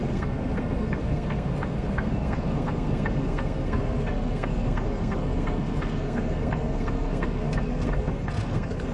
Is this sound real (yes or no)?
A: no